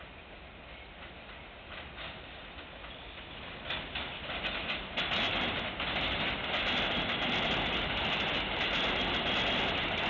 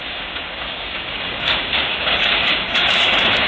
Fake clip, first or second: second